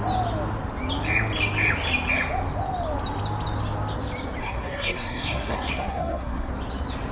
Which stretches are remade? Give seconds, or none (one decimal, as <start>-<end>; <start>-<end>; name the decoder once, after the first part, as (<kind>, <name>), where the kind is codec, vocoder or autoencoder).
4.4-6.5 (codec, SNAC)